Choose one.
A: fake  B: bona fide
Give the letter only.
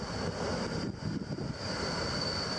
B